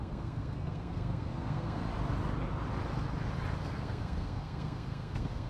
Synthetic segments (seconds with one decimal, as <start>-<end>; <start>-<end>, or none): 0.0-1.8; 3.6-5.5